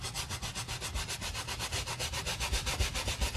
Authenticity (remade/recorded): remade